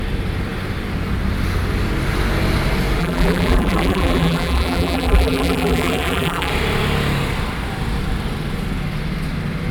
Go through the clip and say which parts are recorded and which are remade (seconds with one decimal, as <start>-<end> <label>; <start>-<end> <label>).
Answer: 0.0-3.0 recorded; 3.0-6.5 remade; 6.5-9.7 recorded